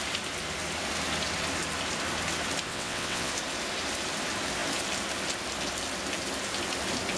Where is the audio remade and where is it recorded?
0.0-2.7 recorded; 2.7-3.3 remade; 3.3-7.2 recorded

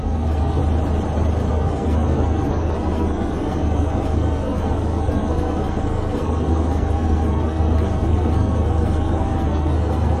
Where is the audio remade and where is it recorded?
0.0-0.6 remade; 0.6-1.5 recorded; 1.5-10.2 remade

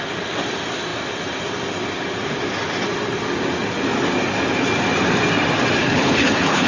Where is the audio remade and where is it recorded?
0.0-5.8 recorded; 5.8-6.7 remade